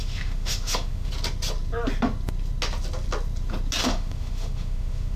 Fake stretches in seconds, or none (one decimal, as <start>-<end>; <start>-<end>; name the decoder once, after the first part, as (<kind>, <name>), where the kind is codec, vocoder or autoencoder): 0.0-1.1 (autoencoder, DAC-VAE); 3.8-5.2